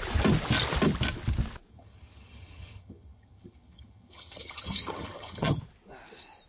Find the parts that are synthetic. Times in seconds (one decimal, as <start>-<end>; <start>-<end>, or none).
1.7-5.6